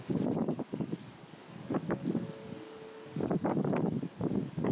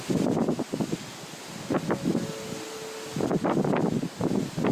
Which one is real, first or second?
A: second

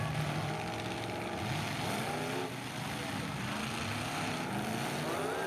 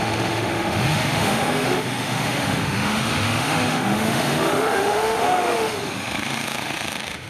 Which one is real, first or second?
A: first